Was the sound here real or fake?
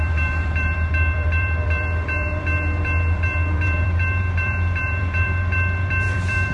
fake